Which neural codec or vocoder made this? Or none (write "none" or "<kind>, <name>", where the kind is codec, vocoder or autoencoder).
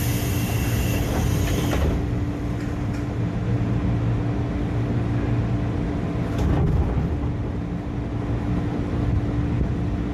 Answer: none